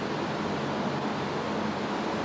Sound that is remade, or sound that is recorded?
recorded